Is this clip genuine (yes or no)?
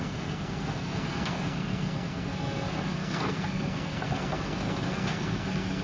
no